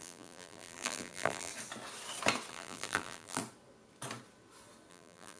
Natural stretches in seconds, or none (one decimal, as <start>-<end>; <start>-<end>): 1.5-2.5; 3.4-4.9